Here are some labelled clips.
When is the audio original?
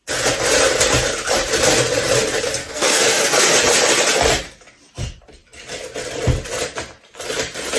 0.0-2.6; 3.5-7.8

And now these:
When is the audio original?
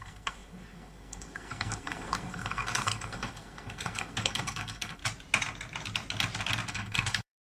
5.0-6.7